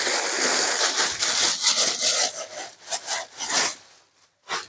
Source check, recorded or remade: recorded